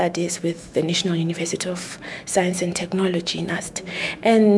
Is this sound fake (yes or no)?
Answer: yes